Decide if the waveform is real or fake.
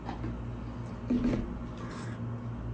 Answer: real